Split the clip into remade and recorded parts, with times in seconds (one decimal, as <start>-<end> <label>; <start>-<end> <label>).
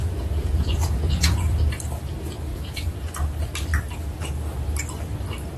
0.0-1.6 remade; 1.6-2.5 recorded; 2.5-3.1 remade; 3.1-5.6 recorded